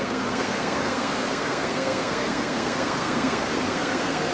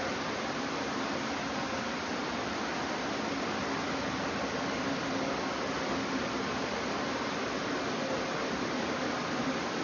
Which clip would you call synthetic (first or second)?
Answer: first